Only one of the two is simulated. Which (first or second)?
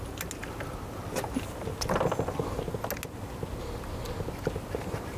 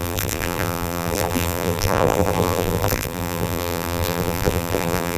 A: second